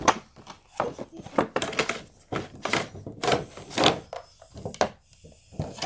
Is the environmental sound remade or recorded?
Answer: recorded